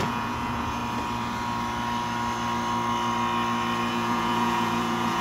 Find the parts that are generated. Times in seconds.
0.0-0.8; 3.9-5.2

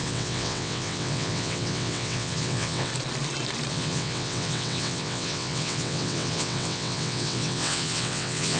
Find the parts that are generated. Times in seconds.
0.0-2.9; 3.7-8.6

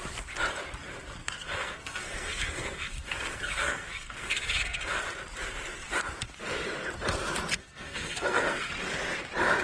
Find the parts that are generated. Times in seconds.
1.2-5.0; 7.6-8.7

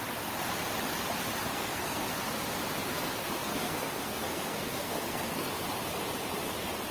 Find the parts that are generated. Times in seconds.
1.5-2.2; 2.8-5.5

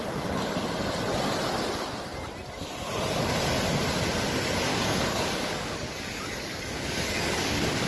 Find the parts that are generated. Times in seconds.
4.7-7.9

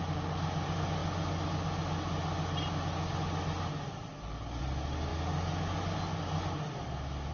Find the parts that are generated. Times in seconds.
none

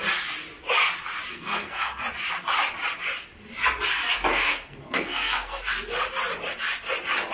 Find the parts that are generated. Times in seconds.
1.3-2.0; 4.3-5.7

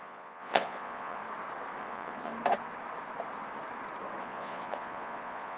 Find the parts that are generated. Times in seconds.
0.0-1.2; 1.8-2.3; 4.2-5.6